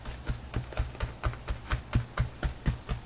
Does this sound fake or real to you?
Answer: real